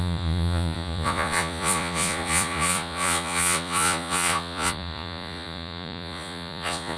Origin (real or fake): fake